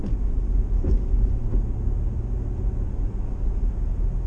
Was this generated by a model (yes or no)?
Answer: no